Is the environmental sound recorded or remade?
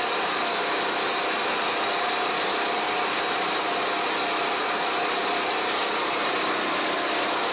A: recorded